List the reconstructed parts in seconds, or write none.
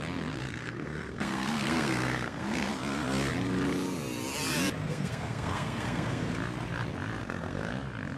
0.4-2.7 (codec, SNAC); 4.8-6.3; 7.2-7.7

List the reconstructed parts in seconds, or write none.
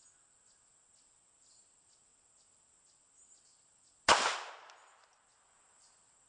none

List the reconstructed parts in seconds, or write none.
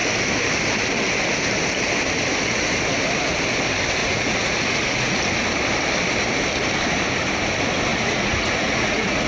4.0-5.1 (vocoder, Vocos); 7.9-9.3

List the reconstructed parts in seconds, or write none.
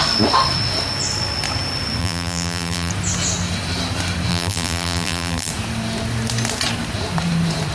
2.0-2.9 (vocoder, BigVGAN v2); 4.3-5.5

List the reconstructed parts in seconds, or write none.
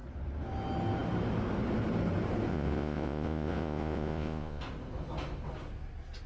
2.5-4.6 (vocoder, Vocos)